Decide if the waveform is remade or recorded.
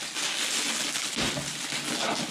recorded